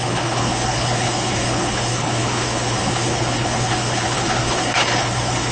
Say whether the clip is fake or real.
fake